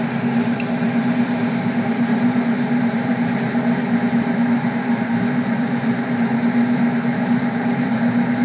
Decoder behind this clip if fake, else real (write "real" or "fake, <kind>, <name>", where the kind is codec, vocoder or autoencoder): fake, vocoder, BigVGAN v2